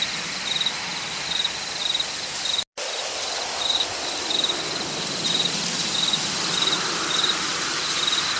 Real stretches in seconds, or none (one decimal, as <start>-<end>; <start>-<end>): 0.0-8.4